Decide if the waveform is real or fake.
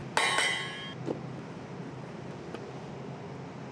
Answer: real